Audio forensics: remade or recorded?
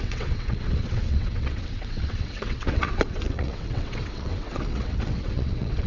remade